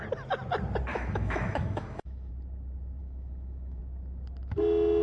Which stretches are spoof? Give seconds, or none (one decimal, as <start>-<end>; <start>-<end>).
0.9-2.3; 3.0-3.8